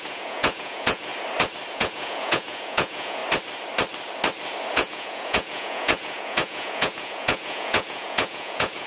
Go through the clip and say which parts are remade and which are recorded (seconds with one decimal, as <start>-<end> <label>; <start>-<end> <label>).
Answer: 0.0-1.1 remade; 1.1-1.7 recorded; 1.7-3.2 remade; 3.2-4.7 recorded; 4.7-8.9 remade